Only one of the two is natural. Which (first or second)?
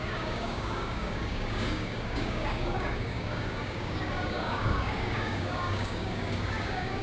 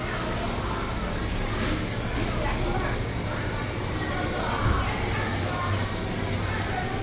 second